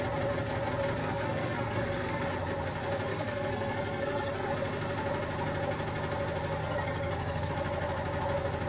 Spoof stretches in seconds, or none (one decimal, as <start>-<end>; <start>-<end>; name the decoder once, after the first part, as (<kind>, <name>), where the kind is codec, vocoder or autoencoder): 1.0-2.2 (codec, SNAC); 3.1-4.5; 6.6-7.5